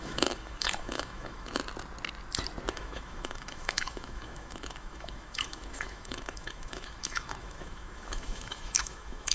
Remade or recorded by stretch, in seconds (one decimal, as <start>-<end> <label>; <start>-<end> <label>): 0.0-1.6 remade; 1.6-2.7 recorded; 2.7-9.3 remade